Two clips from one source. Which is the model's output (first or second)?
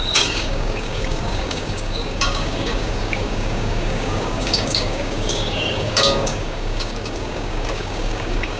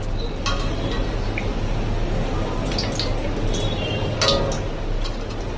first